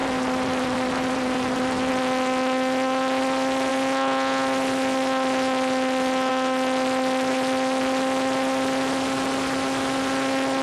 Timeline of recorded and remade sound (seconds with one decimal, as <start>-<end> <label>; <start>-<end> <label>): 0.0-1.9 remade; 1.9-10.6 recorded

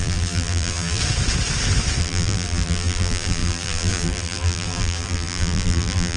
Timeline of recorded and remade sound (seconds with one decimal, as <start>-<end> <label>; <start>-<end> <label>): 0.0-1.0 remade; 1.0-2.0 recorded; 2.0-6.2 remade